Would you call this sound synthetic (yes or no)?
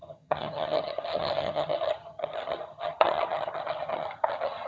yes